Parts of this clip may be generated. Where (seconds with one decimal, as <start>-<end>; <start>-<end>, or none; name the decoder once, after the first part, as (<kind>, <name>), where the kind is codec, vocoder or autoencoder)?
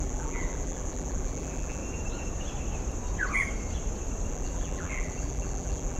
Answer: 0.0-1.8 (vocoder, BigVGAN v2); 4.3-6.0